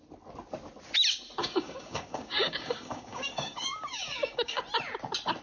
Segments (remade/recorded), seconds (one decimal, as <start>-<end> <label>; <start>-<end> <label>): 0.0-1.4 recorded; 1.4-4.6 remade; 4.6-5.4 recorded